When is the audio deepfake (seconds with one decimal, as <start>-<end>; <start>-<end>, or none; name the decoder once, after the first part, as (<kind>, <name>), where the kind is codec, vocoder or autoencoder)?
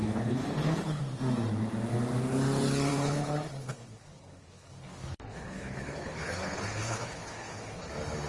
0.0-1.0 (codec, HILCodec); 2.9-7.9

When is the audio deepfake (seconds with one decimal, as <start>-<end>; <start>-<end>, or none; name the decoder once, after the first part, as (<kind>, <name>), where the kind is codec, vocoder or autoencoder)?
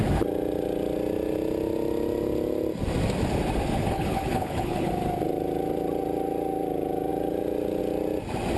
3.8-4.9 (codec, HILCodec)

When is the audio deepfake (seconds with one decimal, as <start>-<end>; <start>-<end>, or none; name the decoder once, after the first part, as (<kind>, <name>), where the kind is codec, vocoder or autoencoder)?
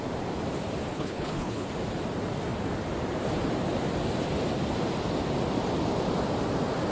0.9-1.7 (codec, HILCodec)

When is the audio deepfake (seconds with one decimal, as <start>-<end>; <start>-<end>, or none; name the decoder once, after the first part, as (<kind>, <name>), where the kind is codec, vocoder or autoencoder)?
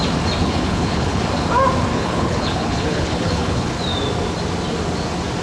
0.4-1.2 (codec, HILCodec); 1.9-3.8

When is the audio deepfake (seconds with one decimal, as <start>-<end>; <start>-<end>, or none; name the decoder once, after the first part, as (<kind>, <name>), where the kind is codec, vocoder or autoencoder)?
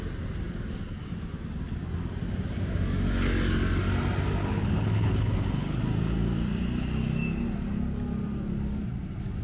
4.4-5.8 (codec, HILCodec)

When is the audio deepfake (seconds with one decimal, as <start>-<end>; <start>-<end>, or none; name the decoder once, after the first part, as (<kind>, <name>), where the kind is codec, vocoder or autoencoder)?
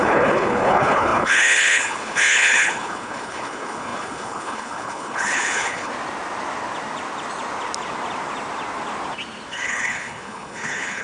0.0-5.9 (codec, HILCodec); 9.5-11.0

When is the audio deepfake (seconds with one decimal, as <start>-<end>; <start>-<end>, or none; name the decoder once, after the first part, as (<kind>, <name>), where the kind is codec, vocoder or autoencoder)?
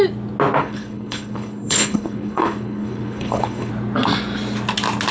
0.6-3.7 (codec, HILCodec)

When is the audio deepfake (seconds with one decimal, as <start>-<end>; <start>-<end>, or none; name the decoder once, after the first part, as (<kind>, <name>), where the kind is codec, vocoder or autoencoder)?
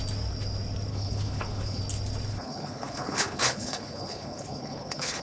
0.9-1.8 (codec, HILCodec); 2.3-5.2